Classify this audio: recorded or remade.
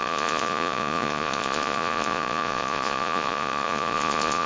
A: remade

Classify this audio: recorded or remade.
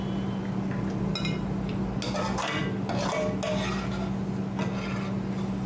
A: recorded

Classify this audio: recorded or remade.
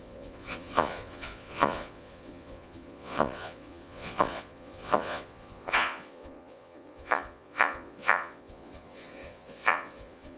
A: remade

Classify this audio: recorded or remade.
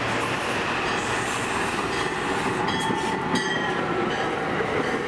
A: recorded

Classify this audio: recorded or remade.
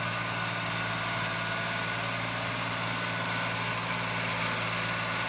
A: recorded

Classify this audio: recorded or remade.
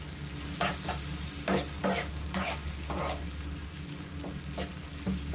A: recorded